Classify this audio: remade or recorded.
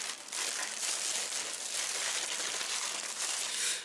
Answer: recorded